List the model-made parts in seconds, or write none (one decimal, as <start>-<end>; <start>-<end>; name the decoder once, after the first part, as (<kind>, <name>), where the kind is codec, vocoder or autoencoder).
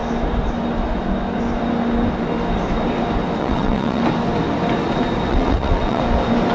3.4-4.0 (vocoder, WaveNeXt); 5.3-6.0